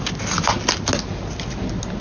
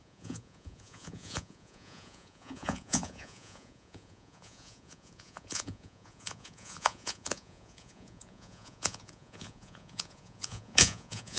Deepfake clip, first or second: second